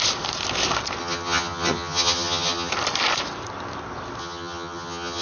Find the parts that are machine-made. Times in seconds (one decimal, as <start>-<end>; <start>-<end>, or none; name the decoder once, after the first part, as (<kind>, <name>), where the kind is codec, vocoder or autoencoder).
1.0-2.7 (vocoder, HiFi-GAN); 4.2-5.2